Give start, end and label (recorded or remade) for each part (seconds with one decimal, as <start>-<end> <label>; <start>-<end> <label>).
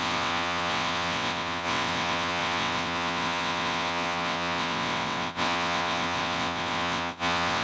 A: 0.0-7.6 remade